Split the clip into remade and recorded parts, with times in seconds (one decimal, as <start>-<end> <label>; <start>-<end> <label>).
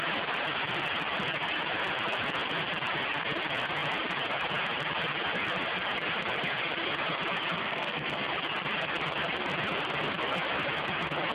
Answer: 0.0-7.6 recorded; 7.6-8.3 remade; 8.3-11.3 recorded